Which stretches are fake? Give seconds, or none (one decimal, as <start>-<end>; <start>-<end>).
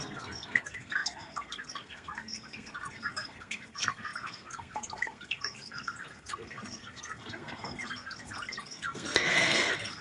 0.0-10.0